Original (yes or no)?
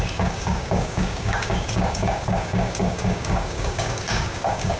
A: no